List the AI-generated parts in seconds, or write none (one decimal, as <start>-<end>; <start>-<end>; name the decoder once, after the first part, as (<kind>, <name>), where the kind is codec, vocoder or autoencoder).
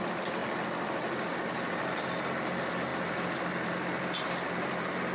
none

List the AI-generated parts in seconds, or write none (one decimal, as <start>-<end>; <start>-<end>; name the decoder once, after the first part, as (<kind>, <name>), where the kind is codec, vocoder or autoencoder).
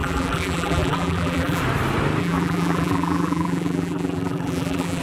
0.0-1.6 (vocoder, BigVGAN v2); 2.2-5.0